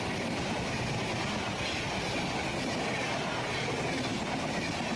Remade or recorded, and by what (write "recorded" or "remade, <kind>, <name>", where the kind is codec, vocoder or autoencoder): recorded